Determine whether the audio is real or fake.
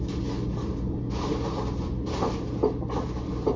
real